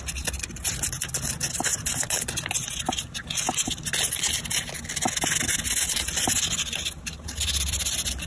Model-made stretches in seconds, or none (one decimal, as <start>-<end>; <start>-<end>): none